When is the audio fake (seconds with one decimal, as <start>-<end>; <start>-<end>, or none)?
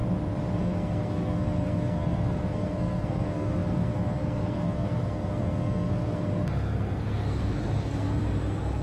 0.6-8.8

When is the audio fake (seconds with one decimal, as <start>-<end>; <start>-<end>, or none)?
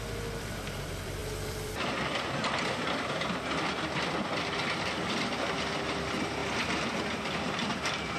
0.0-8.2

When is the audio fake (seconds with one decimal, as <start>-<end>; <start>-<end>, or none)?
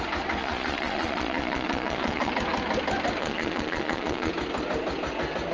0.4-2.3; 3.2-4.3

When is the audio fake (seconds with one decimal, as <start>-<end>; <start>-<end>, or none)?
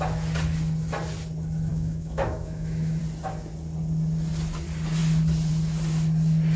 1.7-3.0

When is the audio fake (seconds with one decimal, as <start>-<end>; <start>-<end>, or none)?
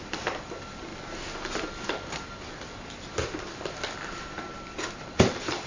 none